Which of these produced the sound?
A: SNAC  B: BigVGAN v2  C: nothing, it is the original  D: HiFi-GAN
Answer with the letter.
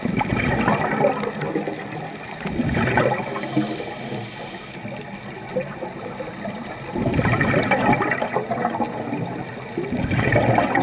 C